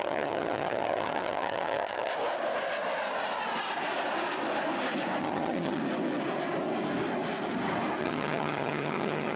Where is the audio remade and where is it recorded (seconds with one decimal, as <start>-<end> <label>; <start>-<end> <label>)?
0.0-2.1 remade; 2.1-5.2 recorded; 5.2-5.8 remade; 5.8-8.0 recorded; 8.0-9.4 remade